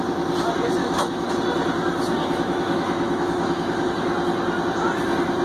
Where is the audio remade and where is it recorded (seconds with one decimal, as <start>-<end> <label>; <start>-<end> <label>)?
0.0-0.8 recorded; 0.8-1.3 remade; 1.3-2.2 recorded; 2.2-3.9 remade; 3.9-5.4 recorded

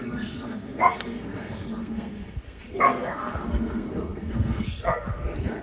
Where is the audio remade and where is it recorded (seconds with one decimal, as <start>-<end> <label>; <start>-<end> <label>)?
0.0-5.6 remade

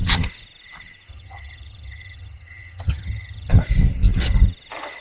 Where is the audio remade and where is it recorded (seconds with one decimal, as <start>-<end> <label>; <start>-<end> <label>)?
0.0-1.1 recorded; 1.1-3.5 remade; 3.5-5.0 recorded

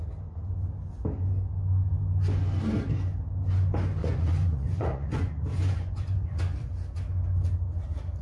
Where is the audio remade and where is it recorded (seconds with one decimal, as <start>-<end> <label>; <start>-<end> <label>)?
0.0-4.0 recorded; 4.0-6.4 remade; 6.4-8.2 recorded

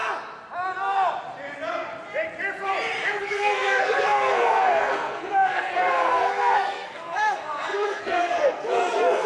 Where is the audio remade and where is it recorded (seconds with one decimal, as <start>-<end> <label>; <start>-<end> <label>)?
0.0-3.2 recorded; 3.2-9.3 remade

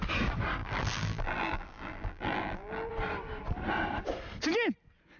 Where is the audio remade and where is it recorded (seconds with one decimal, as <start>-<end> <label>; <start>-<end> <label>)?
0.0-0.6 recorded; 0.6-2.9 remade; 2.9-5.2 recorded